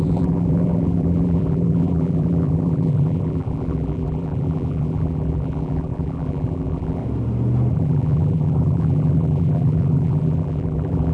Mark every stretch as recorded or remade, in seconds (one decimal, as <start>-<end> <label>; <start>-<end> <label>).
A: 0.0-7.0 remade; 7.0-7.7 recorded; 7.7-11.1 remade